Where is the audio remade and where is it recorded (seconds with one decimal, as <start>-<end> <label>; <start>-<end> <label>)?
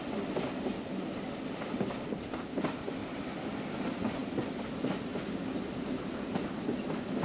0.0-7.2 recorded